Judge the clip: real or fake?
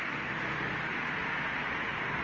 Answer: real